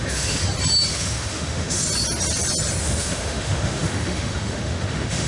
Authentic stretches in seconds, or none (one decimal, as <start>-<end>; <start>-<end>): 0.4-0.9; 1.8-2.8